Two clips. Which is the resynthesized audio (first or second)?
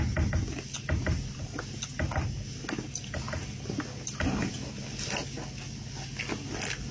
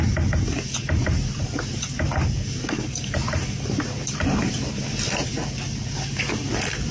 second